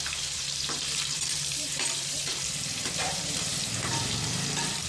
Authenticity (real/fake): fake